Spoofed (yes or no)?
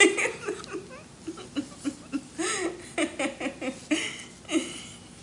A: no